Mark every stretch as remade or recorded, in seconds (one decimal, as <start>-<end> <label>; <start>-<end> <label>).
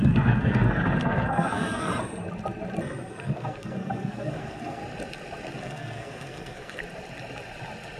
0.0-1.9 remade; 1.9-3.1 recorded; 3.1-4.8 remade; 4.8-5.6 recorded; 5.6-6.8 remade; 6.8-8.0 recorded